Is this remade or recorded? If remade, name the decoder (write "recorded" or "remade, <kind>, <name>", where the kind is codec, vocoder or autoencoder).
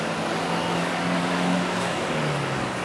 remade, codec, DAC